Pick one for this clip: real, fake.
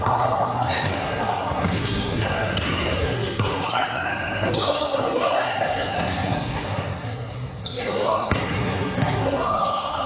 fake